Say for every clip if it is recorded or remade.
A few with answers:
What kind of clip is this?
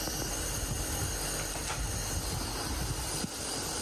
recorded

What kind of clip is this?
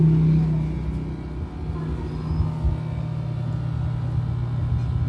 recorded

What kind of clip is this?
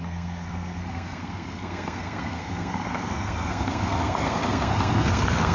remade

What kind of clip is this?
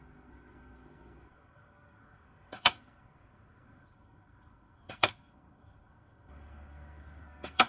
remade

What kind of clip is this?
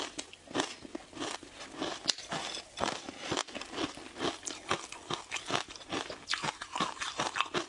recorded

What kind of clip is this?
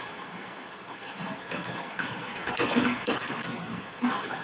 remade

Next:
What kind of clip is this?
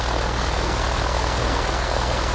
remade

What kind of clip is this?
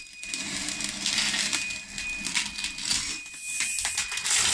recorded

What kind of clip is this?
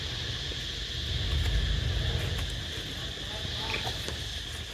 recorded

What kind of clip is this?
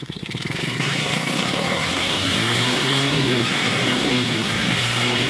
remade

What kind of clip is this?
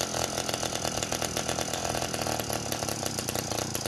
recorded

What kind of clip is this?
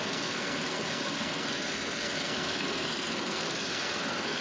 remade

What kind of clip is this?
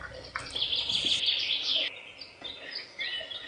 recorded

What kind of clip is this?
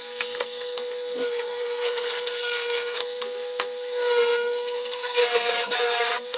remade